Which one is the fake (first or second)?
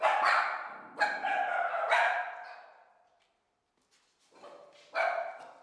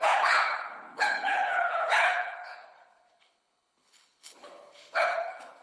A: second